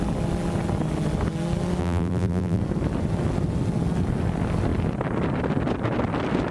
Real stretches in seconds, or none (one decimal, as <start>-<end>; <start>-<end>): 0.0-1.8; 2.6-6.5